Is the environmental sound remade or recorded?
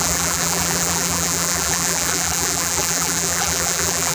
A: remade